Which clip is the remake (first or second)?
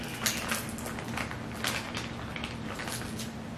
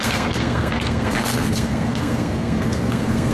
second